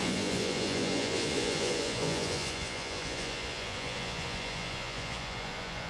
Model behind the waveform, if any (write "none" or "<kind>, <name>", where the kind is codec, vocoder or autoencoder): vocoder, Vocos